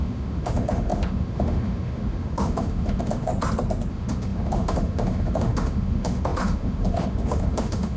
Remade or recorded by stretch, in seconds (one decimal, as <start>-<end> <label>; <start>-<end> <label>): 0.0-3.3 remade; 3.3-3.9 recorded; 3.9-8.0 remade

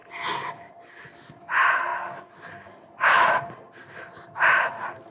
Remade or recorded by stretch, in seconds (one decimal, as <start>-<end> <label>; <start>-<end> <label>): 0.0-5.1 recorded

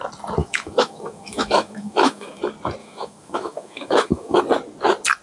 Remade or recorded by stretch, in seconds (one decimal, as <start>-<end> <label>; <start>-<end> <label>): 0.0-0.4 recorded; 0.4-2.4 remade; 2.4-2.8 recorded; 2.8-4.4 remade; 4.4-5.2 recorded

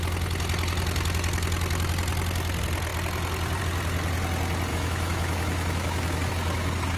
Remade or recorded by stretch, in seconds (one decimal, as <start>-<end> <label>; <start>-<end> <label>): 0.0-4.7 recorded; 4.7-6.3 remade; 6.3-7.0 recorded

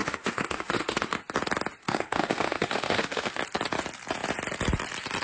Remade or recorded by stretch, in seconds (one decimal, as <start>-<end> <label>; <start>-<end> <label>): 0.0-1.2 remade; 1.2-1.8 recorded; 1.8-3.4 remade; 3.4-5.2 recorded

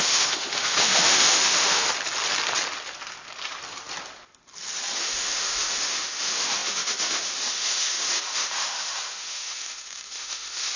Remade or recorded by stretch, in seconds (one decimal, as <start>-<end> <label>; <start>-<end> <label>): 0.0-1.9 remade; 1.9-5.0 recorded; 5.0-10.8 remade

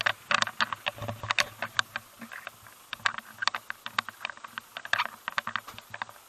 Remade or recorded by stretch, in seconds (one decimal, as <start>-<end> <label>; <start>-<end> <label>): 0.0-6.3 recorded

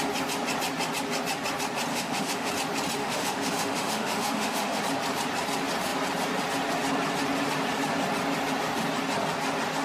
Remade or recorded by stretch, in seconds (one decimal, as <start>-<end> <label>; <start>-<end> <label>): 0.0-1.9 recorded; 1.9-2.5 remade; 2.5-3.0 recorded; 3.0-4.8 remade; 4.8-9.8 recorded